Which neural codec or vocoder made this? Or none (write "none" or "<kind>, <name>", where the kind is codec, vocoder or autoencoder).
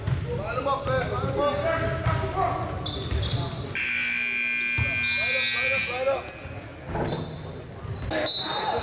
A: none